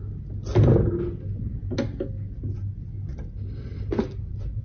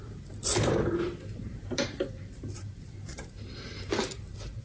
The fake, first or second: second